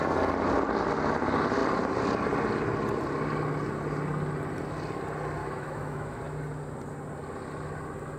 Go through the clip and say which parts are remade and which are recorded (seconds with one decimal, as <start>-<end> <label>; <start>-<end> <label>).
0.0-5.4 recorded; 5.4-6.2 remade; 6.2-8.2 recorded